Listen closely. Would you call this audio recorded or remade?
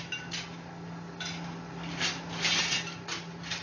recorded